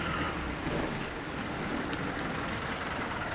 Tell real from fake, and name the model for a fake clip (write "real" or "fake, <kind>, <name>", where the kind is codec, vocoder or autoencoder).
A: real